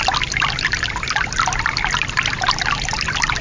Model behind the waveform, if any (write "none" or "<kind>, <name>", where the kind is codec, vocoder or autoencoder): none